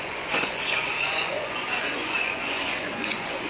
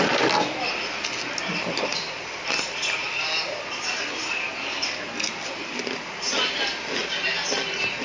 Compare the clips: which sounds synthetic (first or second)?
first